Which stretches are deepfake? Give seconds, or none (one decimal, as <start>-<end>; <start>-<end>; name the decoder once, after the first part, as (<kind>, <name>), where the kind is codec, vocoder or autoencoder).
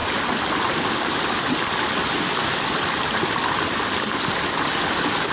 none